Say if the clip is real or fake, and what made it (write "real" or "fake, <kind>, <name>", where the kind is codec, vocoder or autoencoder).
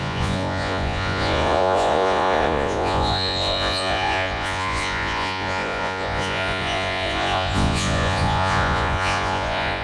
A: fake, vocoder, Vocos